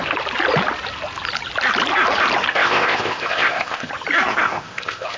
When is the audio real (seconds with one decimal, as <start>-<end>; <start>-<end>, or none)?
0.0-2.5; 3.9-4.4